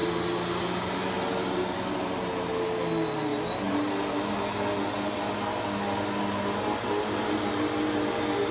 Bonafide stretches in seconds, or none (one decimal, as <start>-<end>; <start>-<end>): 0.0-8.5